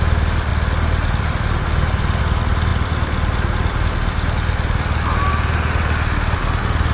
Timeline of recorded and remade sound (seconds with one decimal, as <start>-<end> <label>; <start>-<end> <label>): 0.0-6.9 recorded